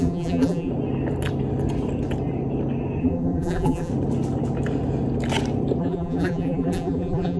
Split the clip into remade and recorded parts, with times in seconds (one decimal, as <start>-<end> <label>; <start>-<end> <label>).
0.0-0.7 remade; 0.7-3.0 recorded; 3.0-3.9 remade; 3.9-5.8 recorded; 5.8-7.4 remade